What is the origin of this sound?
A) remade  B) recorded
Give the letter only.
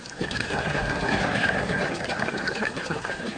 A